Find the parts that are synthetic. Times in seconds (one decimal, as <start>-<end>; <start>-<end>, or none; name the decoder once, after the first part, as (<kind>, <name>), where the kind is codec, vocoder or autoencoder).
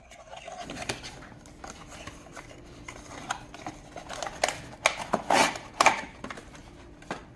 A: 5.4-6.4 (vocoder, BigVGAN v2)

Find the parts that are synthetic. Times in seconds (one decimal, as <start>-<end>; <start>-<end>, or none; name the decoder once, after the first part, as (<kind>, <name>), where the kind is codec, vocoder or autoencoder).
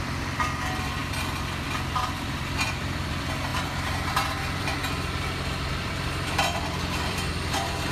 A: 0.0-4.8 (vocoder, BigVGAN v2); 5.7-7.9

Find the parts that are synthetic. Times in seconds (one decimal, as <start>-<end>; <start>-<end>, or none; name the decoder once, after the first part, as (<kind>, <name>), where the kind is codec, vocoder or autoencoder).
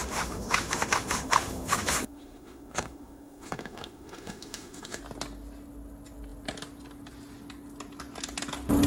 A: 0.0-5.0 (autoencoder, DAC-VAE)